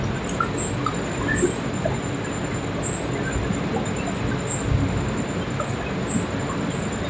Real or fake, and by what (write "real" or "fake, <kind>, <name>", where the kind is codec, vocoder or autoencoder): real